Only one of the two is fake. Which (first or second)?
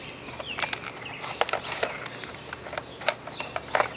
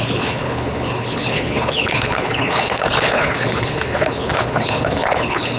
second